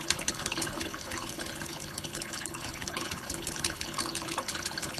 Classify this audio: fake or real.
fake